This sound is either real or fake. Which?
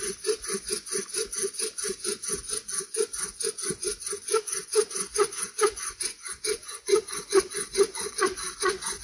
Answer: fake